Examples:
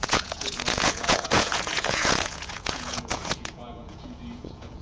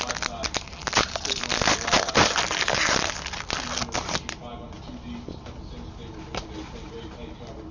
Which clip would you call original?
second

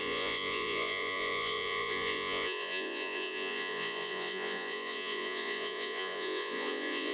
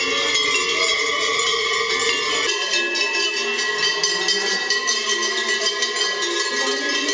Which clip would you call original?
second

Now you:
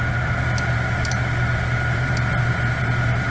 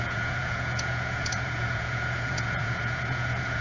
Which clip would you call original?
first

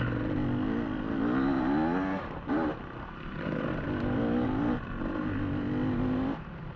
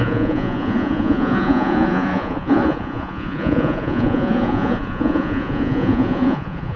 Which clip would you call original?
first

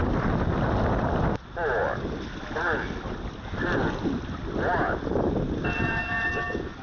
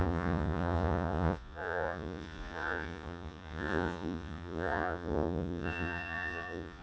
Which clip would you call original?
first